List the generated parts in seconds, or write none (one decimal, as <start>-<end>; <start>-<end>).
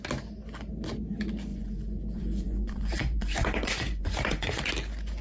1.5-4.6